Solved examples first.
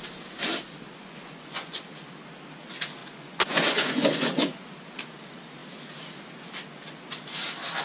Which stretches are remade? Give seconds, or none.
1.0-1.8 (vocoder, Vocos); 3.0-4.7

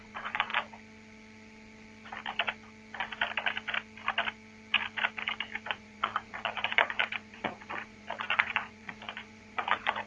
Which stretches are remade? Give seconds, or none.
0.0-0.5 (vocoder, Vocos); 5.7-10.1

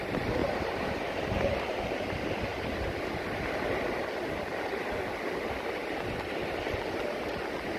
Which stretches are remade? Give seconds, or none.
0.4-1.8 (vocoder, BigVGAN v2)

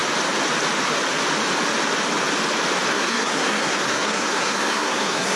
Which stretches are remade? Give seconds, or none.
2.9-5.4 (codec, SNAC)

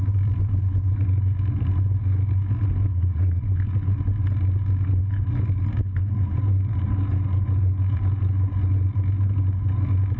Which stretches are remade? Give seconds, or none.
2.9-3.4 (vocoder, Vocos)